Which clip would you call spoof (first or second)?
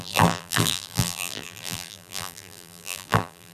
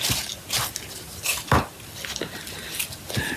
first